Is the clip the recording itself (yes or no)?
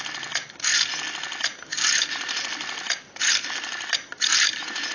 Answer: yes